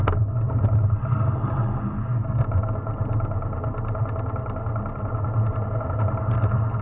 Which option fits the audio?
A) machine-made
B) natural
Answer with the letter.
B